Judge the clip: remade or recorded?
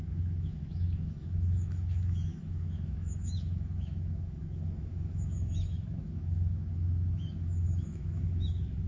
remade